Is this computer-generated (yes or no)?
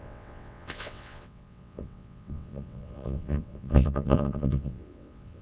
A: yes